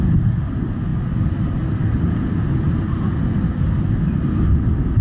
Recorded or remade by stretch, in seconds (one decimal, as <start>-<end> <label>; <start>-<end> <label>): 0.0-5.0 recorded